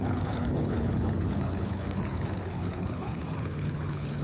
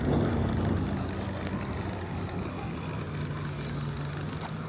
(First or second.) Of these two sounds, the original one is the second